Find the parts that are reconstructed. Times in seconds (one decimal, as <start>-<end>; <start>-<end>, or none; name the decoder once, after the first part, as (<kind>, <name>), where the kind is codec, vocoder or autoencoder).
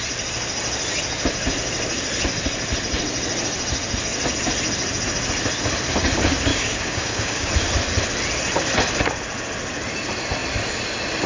6.5-7.5 (codec, DAC)